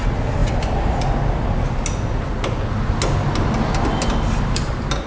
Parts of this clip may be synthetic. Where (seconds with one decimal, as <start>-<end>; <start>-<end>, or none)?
none